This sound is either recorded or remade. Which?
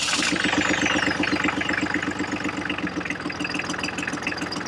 recorded